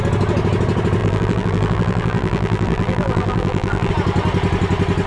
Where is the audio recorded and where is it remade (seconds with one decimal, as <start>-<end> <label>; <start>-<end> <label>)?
0.0-1.0 recorded; 1.0-3.9 remade; 3.9-5.1 recorded

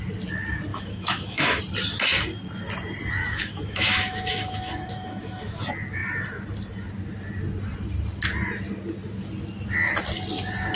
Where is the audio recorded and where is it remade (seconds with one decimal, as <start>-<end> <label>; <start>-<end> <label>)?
0.0-0.7 recorded; 0.7-1.6 remade; 1.6-3.2 recorded; 3.2-5.6 remade; 5.6-10.8 recorded

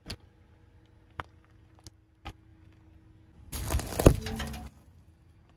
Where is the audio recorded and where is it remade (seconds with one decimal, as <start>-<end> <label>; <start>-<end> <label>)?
0.0-5.6 recorded

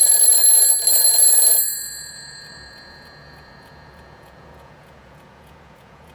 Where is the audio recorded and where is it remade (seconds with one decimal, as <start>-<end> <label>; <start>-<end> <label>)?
0.0-0.4 remade; 0.4-1.5 recorded; 1.5-6.1 remade

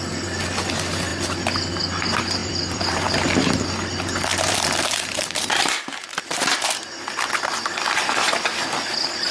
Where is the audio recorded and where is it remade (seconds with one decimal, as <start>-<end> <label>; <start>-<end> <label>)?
0.0-2.4 recorded; 2.4-3.1 remade; 3.1-4.3 recorded; 4.3-7.1 remade; 7.1-9.3 recorded

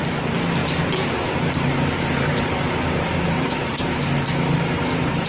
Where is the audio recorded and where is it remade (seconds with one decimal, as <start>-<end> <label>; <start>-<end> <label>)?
0.0-0.6 recorded; 0.6-3.8 remade; 3.8-5.3 recorded

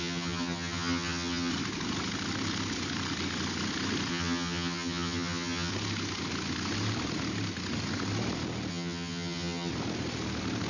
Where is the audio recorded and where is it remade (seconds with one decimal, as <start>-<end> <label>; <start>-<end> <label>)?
0.0-1.5 remade; 1.5-4.1 recorded; 4.1-5.7 remade; 5.7-8.7 recorded; 8.7-9.7 remade; 9.7-10.7 recorded

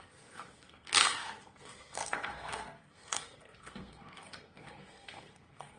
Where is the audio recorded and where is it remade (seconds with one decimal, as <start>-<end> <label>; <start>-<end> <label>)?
0.0-5.8 remade